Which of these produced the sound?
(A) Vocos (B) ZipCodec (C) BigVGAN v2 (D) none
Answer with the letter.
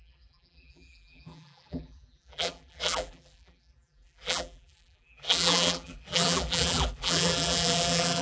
C